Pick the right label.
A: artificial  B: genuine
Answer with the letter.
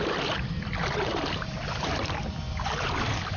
A